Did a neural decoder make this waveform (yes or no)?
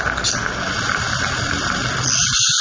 no